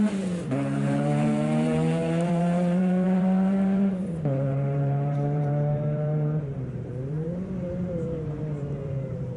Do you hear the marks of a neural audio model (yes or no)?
yes